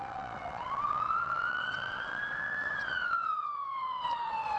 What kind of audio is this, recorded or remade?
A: remade